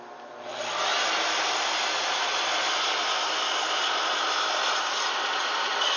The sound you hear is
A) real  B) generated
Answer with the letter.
A